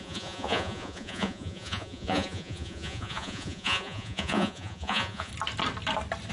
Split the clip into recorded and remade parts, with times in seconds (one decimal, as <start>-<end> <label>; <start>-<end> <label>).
0.0-5.3 remade; 5.3-6.3 recorded